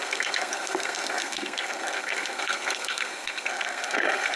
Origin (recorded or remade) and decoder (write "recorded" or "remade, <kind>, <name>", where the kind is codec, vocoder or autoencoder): remade, codec, SNAC